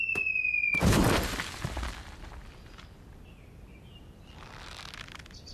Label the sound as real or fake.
real